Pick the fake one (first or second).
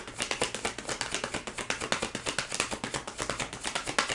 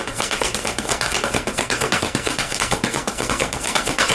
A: second